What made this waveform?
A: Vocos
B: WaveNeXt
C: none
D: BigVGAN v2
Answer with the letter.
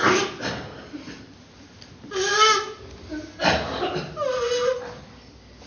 C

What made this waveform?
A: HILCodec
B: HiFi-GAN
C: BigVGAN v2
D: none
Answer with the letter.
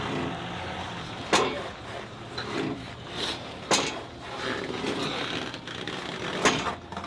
D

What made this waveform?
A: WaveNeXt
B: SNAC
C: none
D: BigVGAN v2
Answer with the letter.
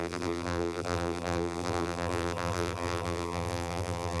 D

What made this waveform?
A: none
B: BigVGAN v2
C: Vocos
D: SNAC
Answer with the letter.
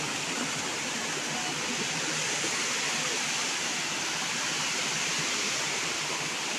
B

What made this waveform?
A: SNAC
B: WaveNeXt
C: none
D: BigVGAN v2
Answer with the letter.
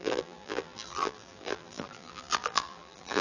D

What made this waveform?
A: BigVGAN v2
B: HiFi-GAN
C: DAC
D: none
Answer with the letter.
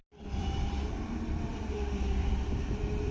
A